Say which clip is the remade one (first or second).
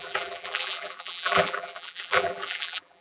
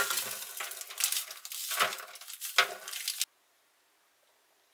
first